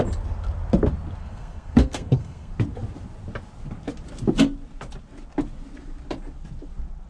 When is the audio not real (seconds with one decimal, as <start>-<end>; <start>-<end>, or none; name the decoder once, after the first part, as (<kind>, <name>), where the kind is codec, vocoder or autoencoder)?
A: 1.2-2.5 (codec, SNAC)